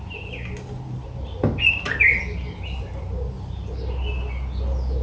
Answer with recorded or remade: recorded